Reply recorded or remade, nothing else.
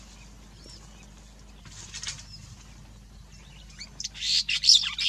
recorded